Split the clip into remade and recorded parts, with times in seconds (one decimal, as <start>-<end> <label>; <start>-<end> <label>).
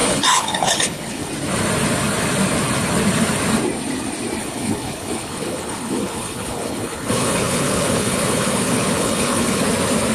0.0-1.3 remade; 1.3-4.4 recorded; 4.4-9.6 remade; 9.6-10.1 recorded